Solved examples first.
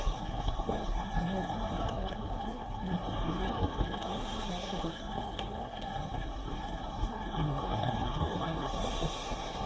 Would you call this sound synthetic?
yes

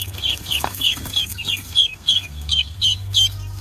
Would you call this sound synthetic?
yes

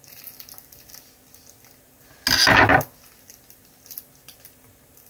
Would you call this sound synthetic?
no